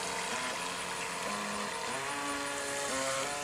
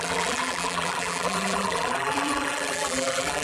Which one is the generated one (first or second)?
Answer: second